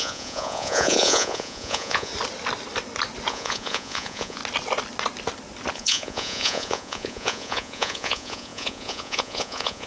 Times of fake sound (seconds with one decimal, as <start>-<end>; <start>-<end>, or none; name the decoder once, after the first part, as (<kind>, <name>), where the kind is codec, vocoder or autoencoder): 0.0-2.1 (vocoder, Vocos); 3.3-4.4; 5.7-9.9